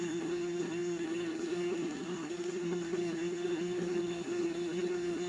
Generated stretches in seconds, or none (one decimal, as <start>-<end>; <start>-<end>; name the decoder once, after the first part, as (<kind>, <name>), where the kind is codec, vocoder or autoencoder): 0.0-5.3 (codec, SNAC)